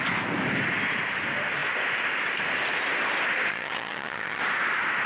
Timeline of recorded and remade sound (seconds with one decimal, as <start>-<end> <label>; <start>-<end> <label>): 0.0-3.5 recorded; 3.5-4.4 remade; 4.4-5.1 recorded

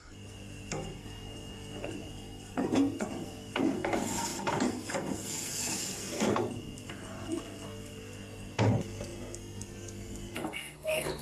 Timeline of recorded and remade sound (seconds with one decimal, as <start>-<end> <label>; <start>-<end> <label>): 0.0-11.2 remade